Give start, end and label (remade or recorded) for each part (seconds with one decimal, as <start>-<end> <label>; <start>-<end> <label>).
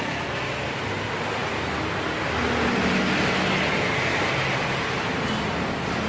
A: 0.0-6.1 recorded